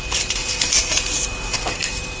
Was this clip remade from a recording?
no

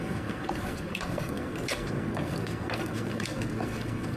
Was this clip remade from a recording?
yes